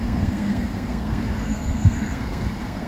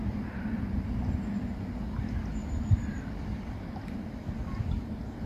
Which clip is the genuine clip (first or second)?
second